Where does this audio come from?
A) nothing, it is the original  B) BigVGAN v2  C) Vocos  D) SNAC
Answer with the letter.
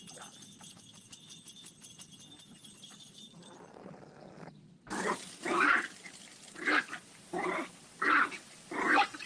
A